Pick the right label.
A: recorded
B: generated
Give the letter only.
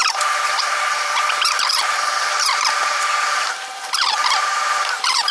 B